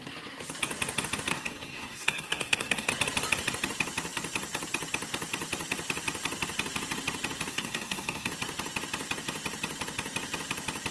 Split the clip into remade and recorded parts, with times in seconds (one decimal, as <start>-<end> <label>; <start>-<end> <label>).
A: 0.0-1.3 recorded; 1.3-2.9 remade; 2.9-7.5 recorded; 7.5-8.3 remade; 8.3-10.9 recorded